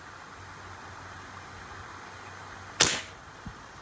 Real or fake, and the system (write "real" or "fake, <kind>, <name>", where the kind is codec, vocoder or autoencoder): real